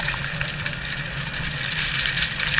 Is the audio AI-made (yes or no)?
no